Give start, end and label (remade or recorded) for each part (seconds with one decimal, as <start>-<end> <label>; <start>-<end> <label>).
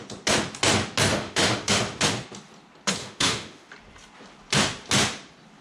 0.0-1.1 recorded; 1.1-1.8 remade; 1.8-3.0 recorded; 3.0-3.7 remade; 3.7-5.6 recorded